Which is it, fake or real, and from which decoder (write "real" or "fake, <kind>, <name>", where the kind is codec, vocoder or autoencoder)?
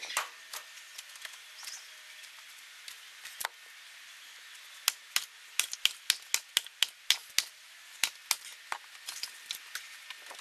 real